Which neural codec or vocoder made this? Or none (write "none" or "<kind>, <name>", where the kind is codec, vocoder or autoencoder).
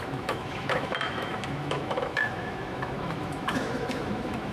autoencoder, DAC-VAE